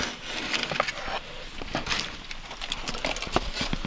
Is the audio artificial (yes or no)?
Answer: no